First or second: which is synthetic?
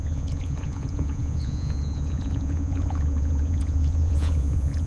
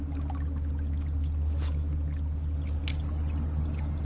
first